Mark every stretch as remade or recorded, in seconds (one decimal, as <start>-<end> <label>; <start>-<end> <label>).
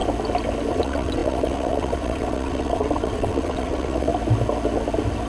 0.0-0.7 recorded; 0.7-4.1 remade; 4.1-5.3 recorded